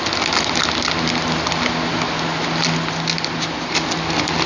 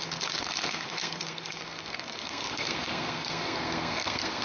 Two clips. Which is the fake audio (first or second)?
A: second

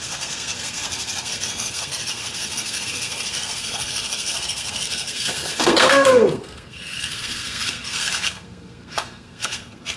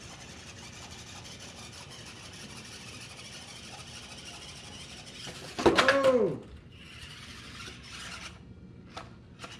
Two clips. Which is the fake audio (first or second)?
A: first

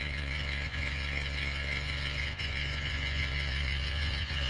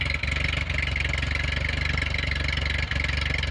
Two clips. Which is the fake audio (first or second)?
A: first